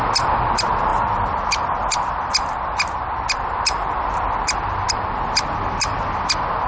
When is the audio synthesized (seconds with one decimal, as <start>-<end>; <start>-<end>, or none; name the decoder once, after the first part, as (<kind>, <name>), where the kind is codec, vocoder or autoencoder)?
none